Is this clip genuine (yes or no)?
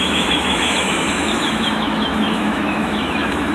no